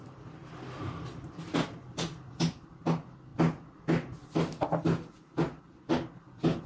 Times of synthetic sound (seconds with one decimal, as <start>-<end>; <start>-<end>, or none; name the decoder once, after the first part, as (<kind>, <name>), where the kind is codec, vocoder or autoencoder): none